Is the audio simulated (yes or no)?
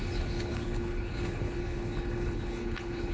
yes